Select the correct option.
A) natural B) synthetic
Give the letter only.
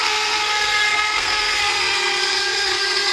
B